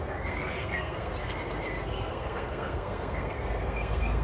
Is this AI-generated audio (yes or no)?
yes